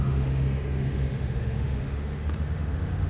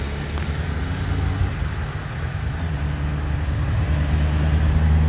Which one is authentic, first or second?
second